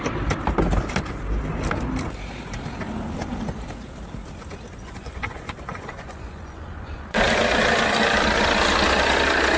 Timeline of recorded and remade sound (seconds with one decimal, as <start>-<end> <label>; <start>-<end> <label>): 0.0-4.8 recorded; 4.8-7.2 remade; 7.2-9.6 recorded